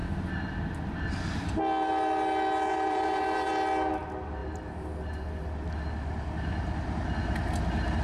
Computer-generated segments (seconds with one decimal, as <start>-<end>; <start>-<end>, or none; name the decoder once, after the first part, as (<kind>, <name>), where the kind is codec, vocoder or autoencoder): 2.7-3.5 (vocoder, BigVGAN v2)